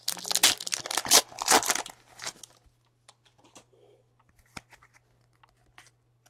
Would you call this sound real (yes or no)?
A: yes